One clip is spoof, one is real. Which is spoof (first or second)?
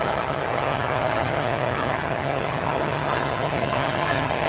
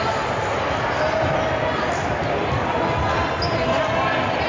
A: first